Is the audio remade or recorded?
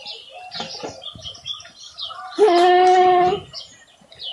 recorded